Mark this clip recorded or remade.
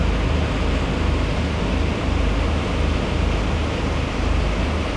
recorded